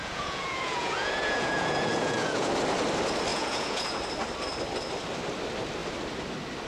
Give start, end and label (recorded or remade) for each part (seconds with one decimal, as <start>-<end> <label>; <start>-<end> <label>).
0.0-2.5 remade; 2.5-3.3 recorded; 3.3-4.0 remade; 4.0-6.7 recorded